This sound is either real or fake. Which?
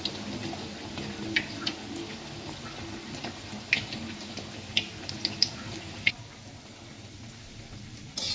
real